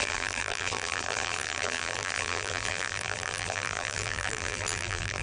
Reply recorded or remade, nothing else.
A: remade